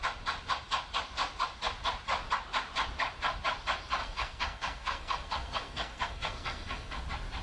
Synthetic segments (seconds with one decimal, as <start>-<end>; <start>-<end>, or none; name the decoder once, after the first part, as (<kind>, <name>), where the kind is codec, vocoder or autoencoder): 4.0-7.0 (codec, SNAC)